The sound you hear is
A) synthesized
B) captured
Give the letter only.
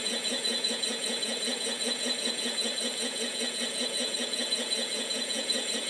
A